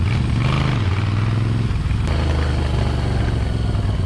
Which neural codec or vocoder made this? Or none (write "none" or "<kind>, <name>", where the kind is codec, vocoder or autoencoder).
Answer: none